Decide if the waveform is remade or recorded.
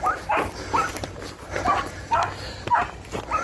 recorded